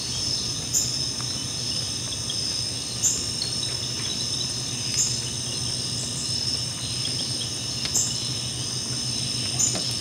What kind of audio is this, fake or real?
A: real